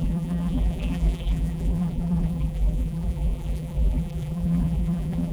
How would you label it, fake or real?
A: fake